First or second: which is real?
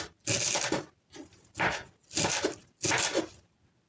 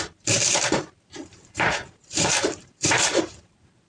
first